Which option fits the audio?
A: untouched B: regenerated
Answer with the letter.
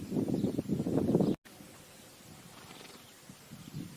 A